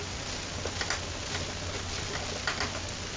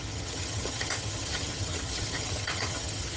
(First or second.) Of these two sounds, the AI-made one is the second